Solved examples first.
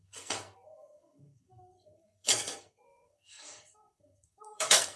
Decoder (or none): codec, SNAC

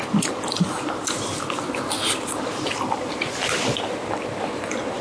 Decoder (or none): none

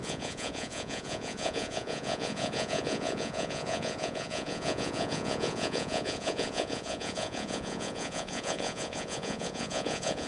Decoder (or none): vocoder, Vocos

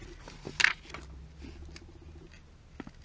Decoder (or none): none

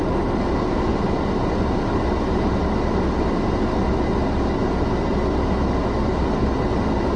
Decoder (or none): none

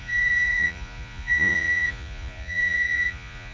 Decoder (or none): vocoder, Vocos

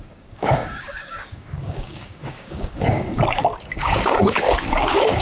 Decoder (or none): codec, DAC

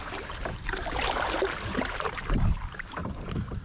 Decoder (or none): vocoder, BigVGAN v2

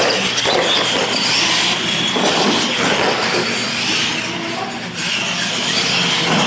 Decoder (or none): none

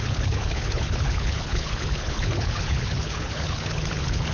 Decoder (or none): codec, HILCodec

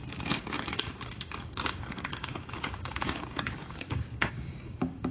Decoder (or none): codec, DAC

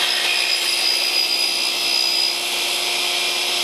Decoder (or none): none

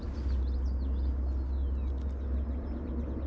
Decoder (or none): none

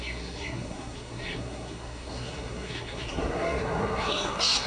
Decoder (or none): codec, SNAC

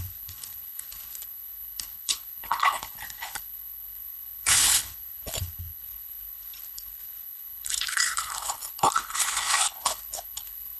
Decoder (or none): codec, HILCodec